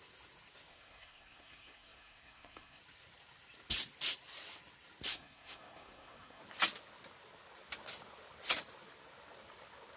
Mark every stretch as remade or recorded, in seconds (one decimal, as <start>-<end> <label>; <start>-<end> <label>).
0.0-0.7 recorded; 0.7-2.8 remade; 2.8-5.1 recorded; 5.1-6.4 remade; 6.4-10.0 recorded